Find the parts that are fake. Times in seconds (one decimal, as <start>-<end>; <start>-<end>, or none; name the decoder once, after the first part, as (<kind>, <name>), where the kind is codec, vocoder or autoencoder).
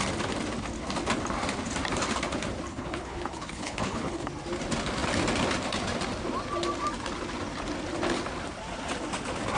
2.7-4.3 (codec, HILCodec)